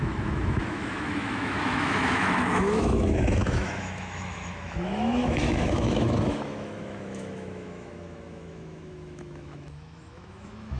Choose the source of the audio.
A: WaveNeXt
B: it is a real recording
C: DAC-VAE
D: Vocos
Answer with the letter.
C